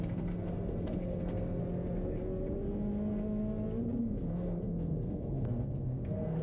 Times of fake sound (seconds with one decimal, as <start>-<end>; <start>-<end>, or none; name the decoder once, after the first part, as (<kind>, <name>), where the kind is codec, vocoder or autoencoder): 0.0-1.6 (codec, SNAC); 4.0-6.4